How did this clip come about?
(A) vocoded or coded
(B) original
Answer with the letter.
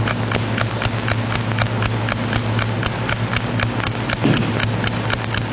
B